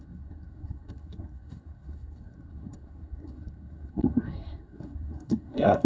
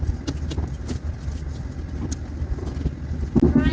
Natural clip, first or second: second